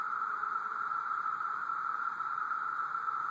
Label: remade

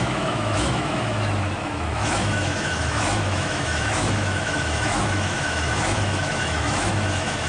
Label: remade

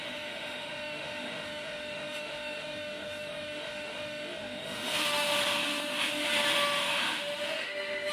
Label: remade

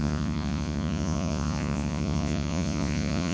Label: remade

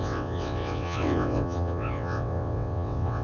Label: remade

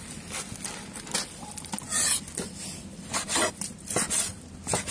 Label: recorded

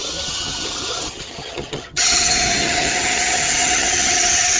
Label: remade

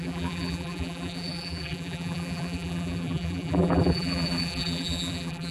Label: remade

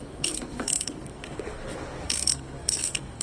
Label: remade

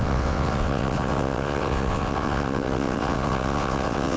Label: remade